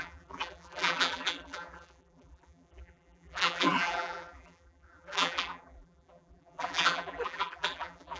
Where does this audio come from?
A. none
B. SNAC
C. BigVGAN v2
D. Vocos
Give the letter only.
C